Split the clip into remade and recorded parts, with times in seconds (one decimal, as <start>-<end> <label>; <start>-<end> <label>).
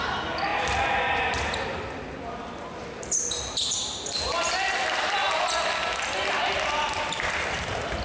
0.0-8.0 recorded